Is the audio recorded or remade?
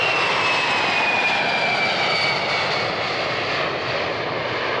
recorded